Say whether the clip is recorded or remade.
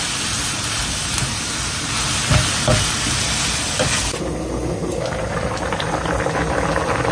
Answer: recorded